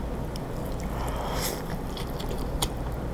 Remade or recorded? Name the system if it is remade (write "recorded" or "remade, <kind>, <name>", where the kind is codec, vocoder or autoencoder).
recorded